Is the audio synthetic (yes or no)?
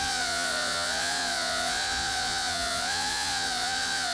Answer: yes